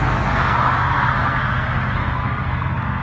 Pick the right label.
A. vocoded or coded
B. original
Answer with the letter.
A